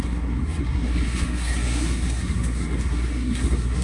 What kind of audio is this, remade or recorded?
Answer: remade